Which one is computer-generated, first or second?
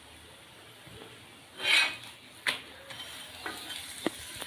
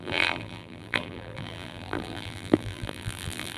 second